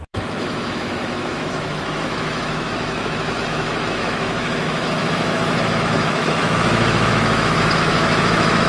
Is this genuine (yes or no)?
no